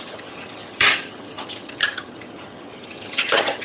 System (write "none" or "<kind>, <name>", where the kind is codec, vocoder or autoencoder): vocoder, HiFi-GAN